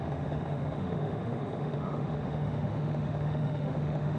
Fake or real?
fake